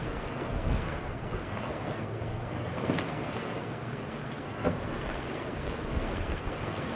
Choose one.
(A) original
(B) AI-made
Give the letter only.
B